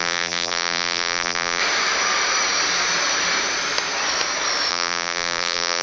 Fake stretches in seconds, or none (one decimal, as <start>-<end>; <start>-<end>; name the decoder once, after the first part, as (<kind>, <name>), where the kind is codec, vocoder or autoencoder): 0.0-1.6 (vocoder, BigVGAN v2); 4.7-5.8